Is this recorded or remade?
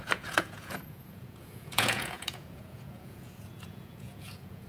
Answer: remade